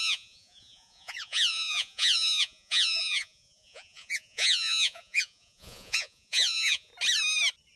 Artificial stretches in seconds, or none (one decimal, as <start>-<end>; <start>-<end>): 0.0-6.9